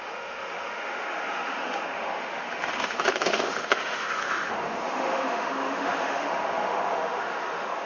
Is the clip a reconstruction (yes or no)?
yes